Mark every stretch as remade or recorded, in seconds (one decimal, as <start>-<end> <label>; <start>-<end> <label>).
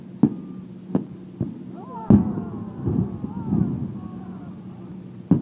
0.0-5.4 recorded